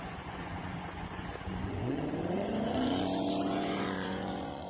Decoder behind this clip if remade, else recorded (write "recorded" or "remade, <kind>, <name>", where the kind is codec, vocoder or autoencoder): remade, vocoder, Vocos